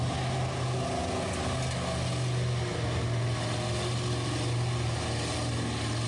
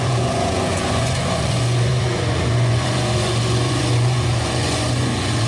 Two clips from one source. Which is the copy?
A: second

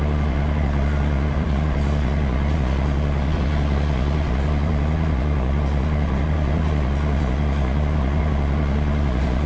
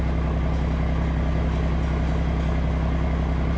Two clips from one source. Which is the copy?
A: first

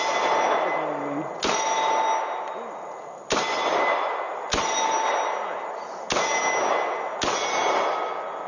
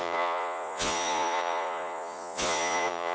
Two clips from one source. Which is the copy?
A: second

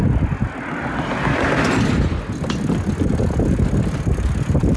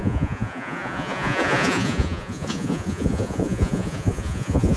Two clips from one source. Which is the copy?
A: second